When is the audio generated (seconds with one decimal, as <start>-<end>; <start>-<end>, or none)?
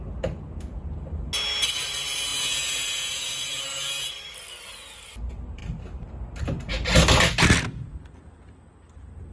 2.3-3.6